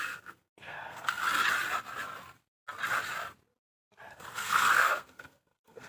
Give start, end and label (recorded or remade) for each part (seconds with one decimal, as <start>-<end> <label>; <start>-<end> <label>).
0.0-1.2 remade; 1.2-4.1 recorded; 4.1-5.9 remade